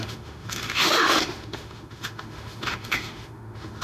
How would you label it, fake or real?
fake